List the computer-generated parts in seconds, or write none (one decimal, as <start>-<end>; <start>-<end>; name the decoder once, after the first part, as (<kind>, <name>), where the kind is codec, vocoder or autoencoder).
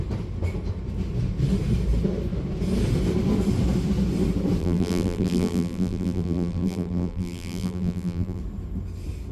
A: 4.6-8.4 (vocoder, BigVGAN v2)